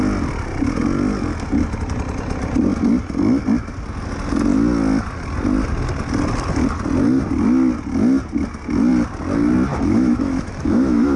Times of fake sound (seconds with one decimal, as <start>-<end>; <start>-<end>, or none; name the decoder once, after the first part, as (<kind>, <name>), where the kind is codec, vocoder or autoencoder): 9.7-11.2 (autoencoder, DAC-VAE)